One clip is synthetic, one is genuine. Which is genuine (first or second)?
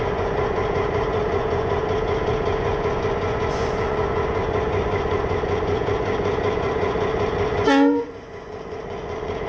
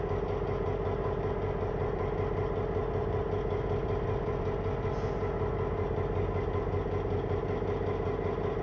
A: second